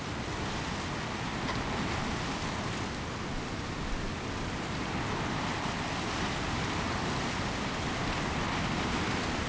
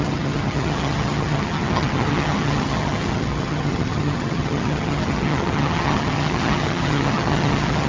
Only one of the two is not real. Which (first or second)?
second